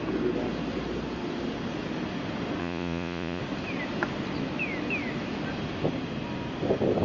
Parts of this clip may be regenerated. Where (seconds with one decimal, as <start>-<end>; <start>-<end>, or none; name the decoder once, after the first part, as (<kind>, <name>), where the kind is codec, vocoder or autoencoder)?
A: 2.6-3.4 (vocoder, Vocos)